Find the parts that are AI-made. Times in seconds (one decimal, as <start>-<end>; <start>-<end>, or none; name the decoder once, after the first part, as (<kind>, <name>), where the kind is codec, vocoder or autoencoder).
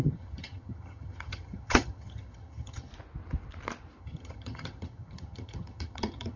0.0-2.9 (vocoder, HiFi-GAN); 4.0-6.4